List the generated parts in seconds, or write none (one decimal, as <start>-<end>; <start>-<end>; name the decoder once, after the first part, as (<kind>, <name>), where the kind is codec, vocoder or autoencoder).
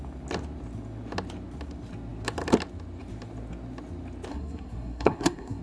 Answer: 4.3-5.6 (codec, SNAC)